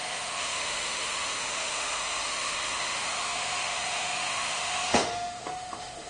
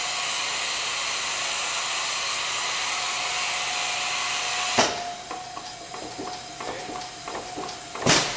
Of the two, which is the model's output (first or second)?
first